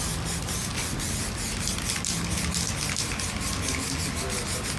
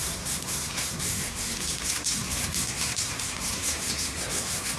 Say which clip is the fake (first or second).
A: second